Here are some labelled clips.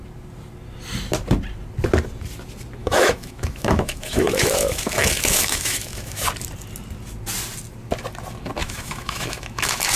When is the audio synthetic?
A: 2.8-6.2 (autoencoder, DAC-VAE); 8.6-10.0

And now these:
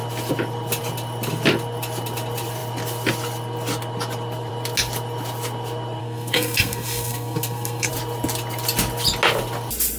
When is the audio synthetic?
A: 6.0-7.9 (codec, SNAC)

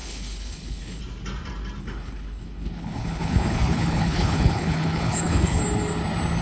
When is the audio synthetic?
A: 0.0-1.0 (codec, HILCodec); 1.8-5.6

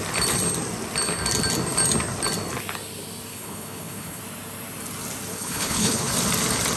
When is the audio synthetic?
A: 3.3-4.2 (codec, HILCodec); 5.3-6.1

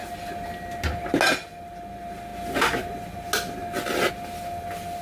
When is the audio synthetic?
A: none

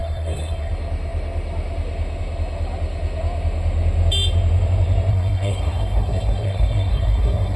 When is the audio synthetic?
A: 0.0-0.7 (codec, SNAC); 5.1-7.6

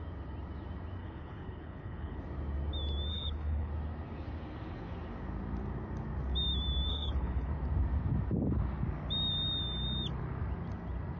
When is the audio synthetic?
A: 1.0-2.2 (codec, HILCodec); 3.1-3.7; 6.9-7.5